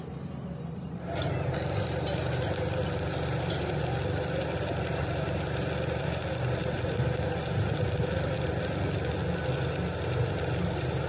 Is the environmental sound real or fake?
real